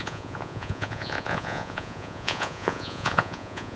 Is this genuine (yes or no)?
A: no